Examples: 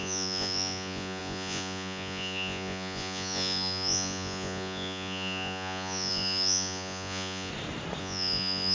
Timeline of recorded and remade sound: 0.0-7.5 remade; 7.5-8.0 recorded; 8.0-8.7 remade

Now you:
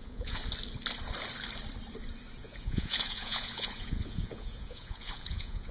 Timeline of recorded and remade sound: 0.0-0.4 remade; 0.4-2.4 recorded; 2.4-5.7 remade